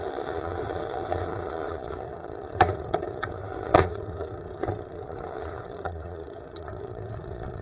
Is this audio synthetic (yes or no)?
yes